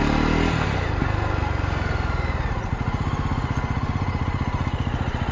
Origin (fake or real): real